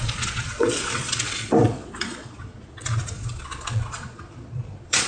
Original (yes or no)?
no